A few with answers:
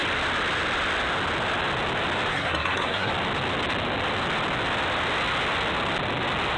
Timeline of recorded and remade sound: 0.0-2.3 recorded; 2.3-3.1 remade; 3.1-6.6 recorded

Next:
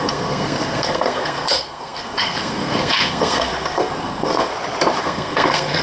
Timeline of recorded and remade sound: 0.0-4.5 remade; 4.5-5.0 recorded; 5.0-5.8 remade

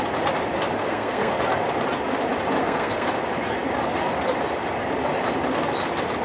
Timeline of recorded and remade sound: 0.0-0.8 recorded; 0.8-1.3 remade; 1.3-2.6 recorded; 2.6-3.1 remade; 3.1-6.2 recorded

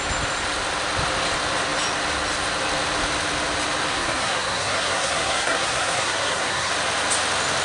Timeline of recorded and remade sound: 0.0-3.9 recorded; 3.9-6.7 remade; 6.7-7.6 recorded